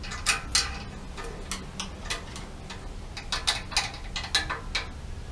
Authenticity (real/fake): real